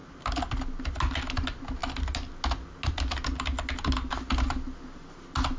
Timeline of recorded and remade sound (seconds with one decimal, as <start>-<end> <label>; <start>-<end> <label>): 0.0-5.6 recorded